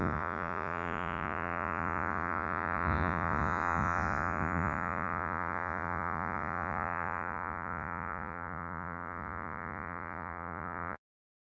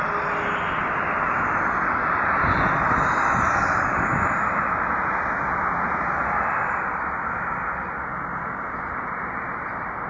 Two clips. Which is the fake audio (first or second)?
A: first